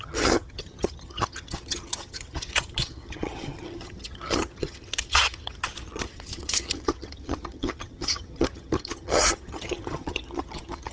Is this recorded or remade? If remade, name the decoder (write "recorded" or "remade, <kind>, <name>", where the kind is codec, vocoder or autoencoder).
remade, vocoder, HiFi-GAN